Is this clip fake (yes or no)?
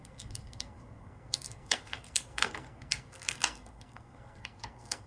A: yes